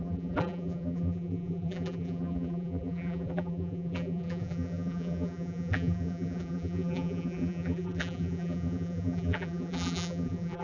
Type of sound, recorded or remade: remade